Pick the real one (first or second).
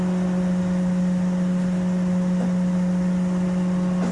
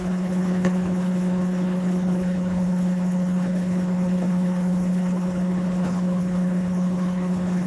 first